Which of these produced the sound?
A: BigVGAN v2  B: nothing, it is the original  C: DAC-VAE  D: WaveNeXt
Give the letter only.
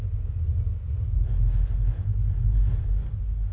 B